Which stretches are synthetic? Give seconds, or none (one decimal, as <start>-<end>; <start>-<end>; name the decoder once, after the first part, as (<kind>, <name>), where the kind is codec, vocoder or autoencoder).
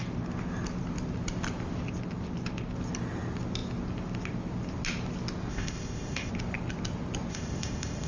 5.5-6.3 (codec, ZipCodec); 7.3-8.1